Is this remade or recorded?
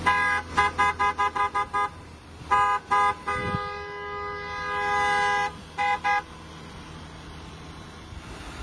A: recorded